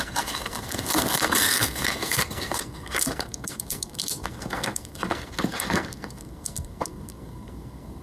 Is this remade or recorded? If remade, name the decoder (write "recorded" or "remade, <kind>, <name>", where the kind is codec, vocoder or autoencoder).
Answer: remade, codec, SNAC